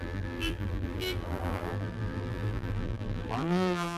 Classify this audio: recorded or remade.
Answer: remade